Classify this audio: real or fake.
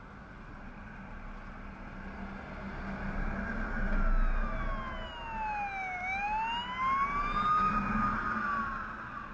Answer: real